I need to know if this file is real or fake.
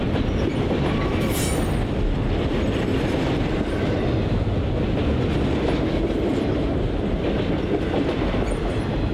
real